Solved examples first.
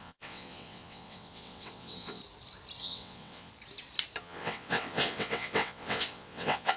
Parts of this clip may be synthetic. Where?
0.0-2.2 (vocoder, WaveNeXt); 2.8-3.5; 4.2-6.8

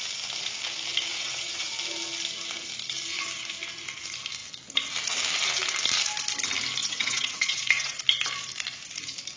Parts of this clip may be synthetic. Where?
1.1-1.7 (vocoder, WaveNeXt); 6.8-8.0

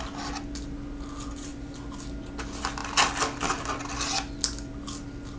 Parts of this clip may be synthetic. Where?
none

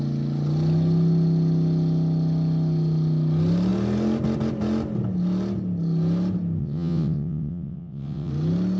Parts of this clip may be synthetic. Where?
6.6-8.3 (vocoder, WaveNeXt)

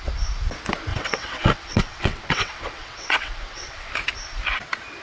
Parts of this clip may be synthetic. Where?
0.9-3.9 (vocoder, WaveNeXt)

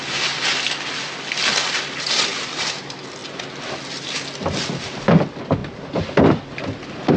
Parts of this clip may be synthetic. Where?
none

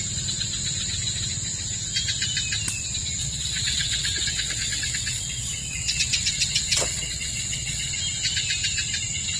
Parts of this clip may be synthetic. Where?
3.2-7.9 (vocoder, WaveNeXt)

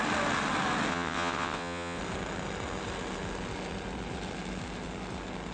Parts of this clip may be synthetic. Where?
0.9-2.0 (vocoder, WaveNeXt)